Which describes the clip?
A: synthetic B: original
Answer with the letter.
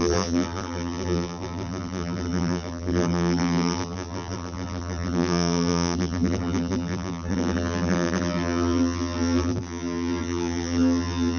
A